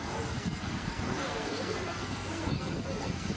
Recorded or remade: remade